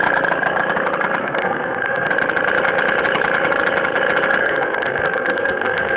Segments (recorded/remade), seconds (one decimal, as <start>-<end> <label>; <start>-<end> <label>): 0.0-1.2 recorded; 1.2-2.1 remade; 2.1-4.4 recorded; 4.4-6.0 remade